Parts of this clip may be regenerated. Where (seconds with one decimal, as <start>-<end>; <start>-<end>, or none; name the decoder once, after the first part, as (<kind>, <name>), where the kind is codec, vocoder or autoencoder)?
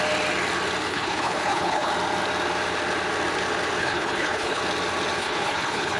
0.9-1.9 (codec, HILCodec); 3.8-4.6; 5.2-6.0